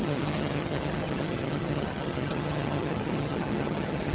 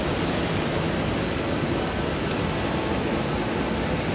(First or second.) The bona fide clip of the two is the second